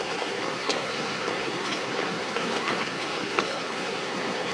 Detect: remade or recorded remade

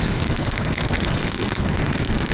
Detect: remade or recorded remade